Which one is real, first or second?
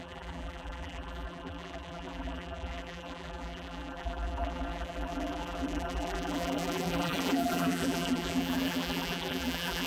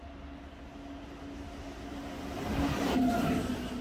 second